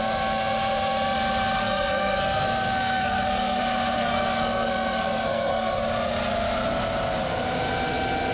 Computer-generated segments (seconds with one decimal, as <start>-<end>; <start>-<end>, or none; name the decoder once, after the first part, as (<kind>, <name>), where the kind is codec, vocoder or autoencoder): 1.6-3.6 (codec, SNAC); 4.0-5.8